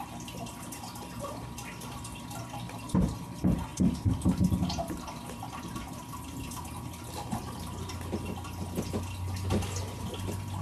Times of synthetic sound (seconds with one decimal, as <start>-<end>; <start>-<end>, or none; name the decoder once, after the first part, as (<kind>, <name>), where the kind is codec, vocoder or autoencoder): none